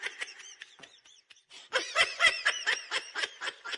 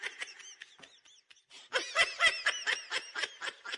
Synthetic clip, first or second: first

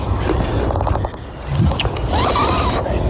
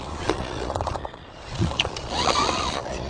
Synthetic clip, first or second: second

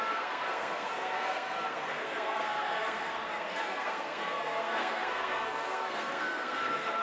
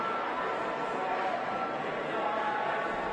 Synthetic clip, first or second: first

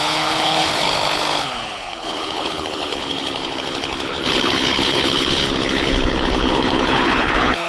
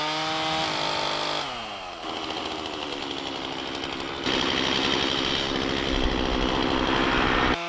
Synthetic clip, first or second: first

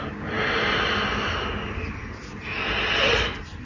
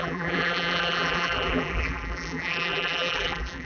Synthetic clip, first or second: second